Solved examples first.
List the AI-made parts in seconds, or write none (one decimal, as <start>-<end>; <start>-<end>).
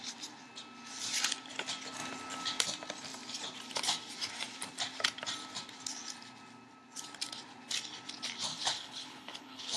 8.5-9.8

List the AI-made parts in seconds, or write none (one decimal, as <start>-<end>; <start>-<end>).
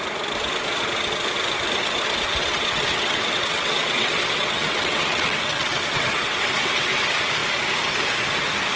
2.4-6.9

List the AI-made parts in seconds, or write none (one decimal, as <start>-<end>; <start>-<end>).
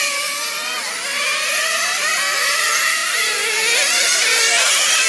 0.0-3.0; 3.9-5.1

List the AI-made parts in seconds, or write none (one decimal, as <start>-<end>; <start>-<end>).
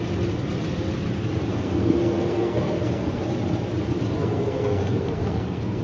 1.5-3.2; 4.2-5.8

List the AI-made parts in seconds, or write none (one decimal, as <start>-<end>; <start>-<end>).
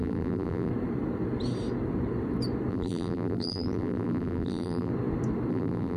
0.0-0.7; 2.7-4.9; 5.5-6.0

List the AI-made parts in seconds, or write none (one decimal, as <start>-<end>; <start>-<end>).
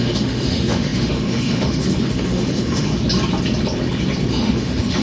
0.0-2.9; 4.3-5.0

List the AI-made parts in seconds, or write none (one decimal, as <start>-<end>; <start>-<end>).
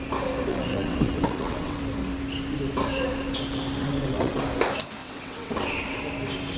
0.5-1.8; 3.8-4.4; 5.0-5.5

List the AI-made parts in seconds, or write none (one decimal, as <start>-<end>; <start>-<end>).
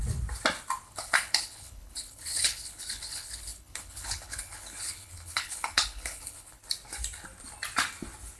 0.9-6.6